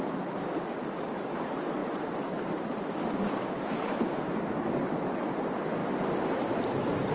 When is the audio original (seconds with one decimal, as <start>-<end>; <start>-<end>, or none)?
none